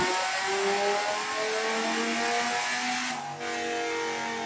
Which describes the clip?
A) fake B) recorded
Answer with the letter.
B